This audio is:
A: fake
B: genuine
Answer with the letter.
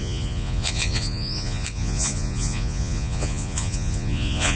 A